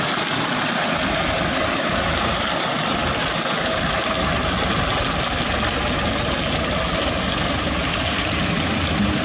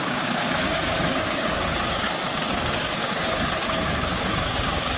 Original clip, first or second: first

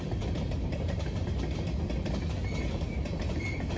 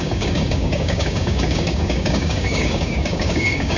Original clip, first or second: first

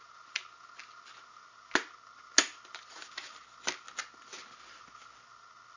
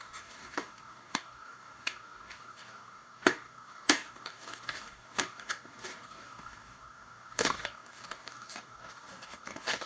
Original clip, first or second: first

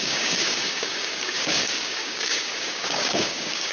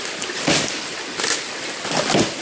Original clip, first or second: second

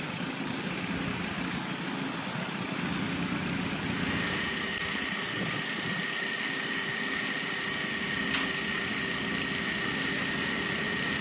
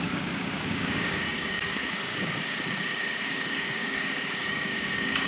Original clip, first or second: first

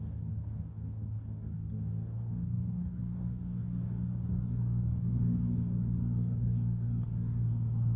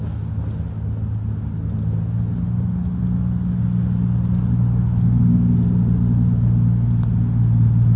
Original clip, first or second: second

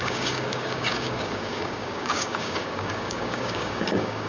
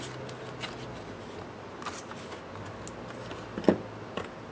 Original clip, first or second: second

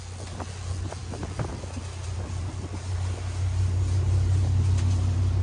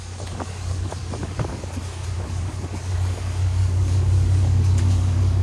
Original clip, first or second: first